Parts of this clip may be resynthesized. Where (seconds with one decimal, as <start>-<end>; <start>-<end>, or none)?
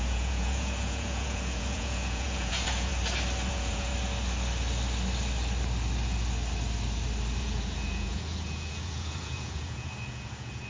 0.0-2.9; 3.5-3.9; 7.4-10.7